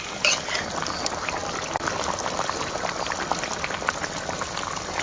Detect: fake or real fake